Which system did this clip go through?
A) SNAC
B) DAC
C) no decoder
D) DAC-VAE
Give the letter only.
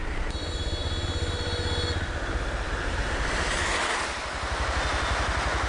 C